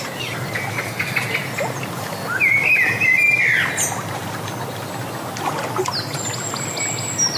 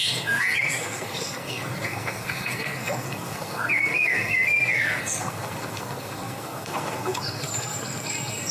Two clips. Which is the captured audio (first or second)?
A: first